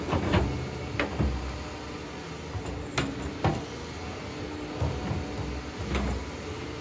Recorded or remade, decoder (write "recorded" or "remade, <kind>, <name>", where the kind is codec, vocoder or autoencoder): recorded